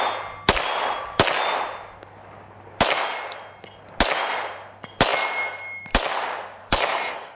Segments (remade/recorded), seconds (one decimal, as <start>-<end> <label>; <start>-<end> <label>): 0.0-6.6 recorded; 6.6-7.4 remade